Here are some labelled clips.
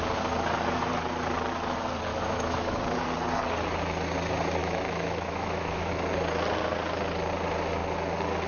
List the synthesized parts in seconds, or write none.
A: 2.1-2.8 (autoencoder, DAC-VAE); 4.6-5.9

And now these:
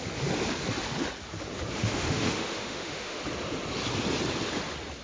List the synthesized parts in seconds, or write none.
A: 1.8-3.2 (autoencoder, DAC-VAE)

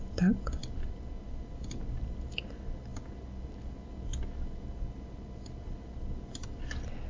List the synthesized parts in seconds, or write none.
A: none

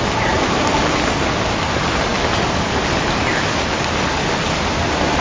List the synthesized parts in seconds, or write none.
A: none

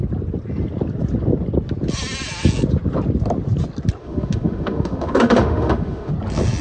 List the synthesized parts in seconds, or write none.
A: 4.0-6.1 (autoencoder, DAC-VAE)

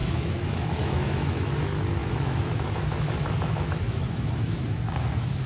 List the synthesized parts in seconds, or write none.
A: 0.0-1.5 (autoencoder, DAC-VAE); 2.0-5.5

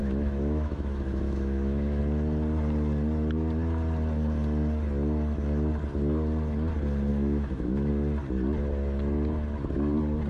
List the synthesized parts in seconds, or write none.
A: 0.0-2.0 (autoencoder, DAC-VAE); 7.1-7.9

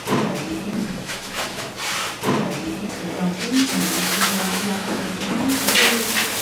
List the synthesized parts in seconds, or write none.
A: 0.8-1.7 (autoencoder, DAC-VAE); 4.0-5.1